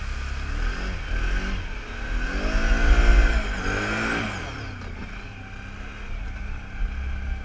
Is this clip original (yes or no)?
yes